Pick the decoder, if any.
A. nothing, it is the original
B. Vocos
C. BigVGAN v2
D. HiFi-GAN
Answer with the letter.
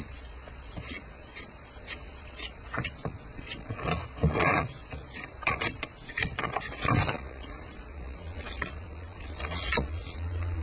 B